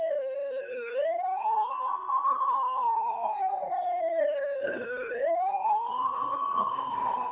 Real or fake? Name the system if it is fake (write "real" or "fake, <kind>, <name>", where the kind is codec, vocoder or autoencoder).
fake, codec, SNAC